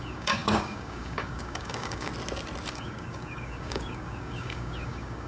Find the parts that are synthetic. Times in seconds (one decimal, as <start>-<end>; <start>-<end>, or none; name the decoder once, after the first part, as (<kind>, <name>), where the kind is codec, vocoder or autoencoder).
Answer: 0.0-2.1 (codec, DAC); 2.7-5.3